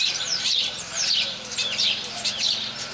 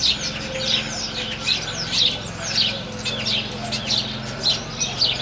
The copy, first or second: first